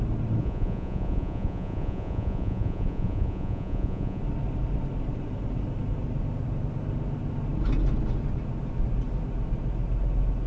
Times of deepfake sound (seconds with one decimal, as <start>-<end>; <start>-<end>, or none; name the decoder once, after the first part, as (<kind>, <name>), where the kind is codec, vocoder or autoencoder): 0.4-4.2 (vocoder, Vocos)